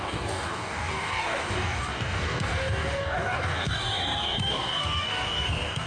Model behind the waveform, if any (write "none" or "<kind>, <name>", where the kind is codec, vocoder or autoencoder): codec, DAC